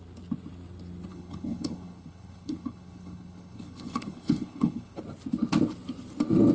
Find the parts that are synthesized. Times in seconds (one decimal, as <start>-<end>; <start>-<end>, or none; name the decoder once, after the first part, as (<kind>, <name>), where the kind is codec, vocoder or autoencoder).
1.1-5.0 (codec, HILCodec)